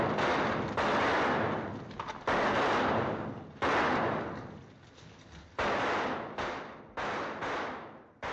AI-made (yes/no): no